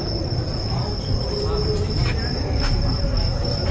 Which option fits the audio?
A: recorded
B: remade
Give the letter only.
B